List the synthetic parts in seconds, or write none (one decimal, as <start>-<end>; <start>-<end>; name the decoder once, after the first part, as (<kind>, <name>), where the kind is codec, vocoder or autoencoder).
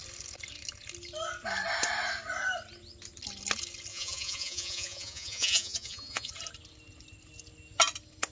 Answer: 3.9-6.3 (vocoder, Vocos)